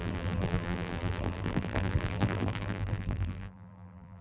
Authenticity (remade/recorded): remade